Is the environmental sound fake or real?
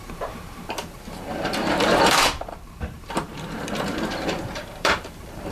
fake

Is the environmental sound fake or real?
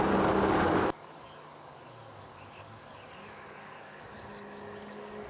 fake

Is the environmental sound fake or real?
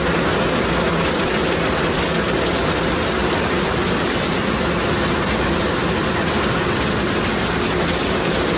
real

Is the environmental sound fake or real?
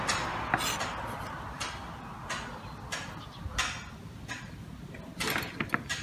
real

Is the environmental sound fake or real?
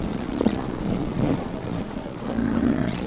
fake